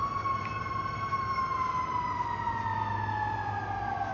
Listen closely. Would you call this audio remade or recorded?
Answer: recorded